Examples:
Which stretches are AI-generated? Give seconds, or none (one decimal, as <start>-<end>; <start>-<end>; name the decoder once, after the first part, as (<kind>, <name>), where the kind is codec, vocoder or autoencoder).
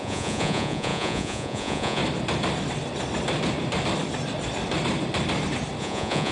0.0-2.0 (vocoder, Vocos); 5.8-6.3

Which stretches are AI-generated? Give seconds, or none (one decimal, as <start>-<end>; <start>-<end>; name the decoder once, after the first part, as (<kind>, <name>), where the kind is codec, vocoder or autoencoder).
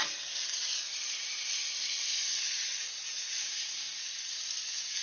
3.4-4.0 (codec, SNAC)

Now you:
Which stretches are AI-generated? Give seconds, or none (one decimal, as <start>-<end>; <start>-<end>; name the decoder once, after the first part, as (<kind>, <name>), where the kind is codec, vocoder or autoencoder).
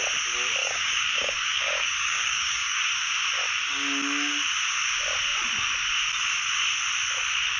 0.6-2.8 (codec, DAC)